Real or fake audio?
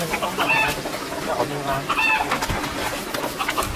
real